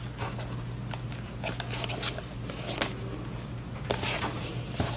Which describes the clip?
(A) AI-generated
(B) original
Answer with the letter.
B